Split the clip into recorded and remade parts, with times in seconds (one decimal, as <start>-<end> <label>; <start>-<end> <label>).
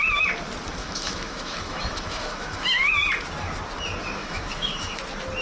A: 0.0-0.8 recorded; 0.8-2.9 remade; 2.9-4.2 recorded; 4.2-5.0 remade; 5.0-5.4 recorded